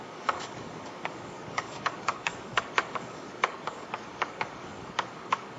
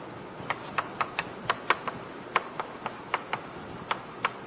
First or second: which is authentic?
second